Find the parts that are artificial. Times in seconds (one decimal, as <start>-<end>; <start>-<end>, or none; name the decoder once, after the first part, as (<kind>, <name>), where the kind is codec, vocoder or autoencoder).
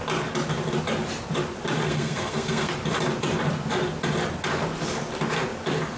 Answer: 1.8-2.7 (codec, SNAC)